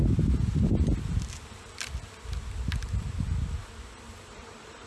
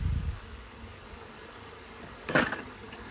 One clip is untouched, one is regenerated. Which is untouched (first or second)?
first